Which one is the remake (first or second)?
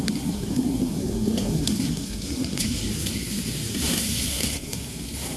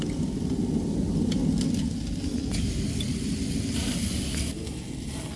first